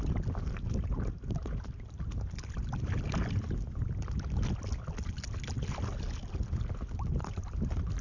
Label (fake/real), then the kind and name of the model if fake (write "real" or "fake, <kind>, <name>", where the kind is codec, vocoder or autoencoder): real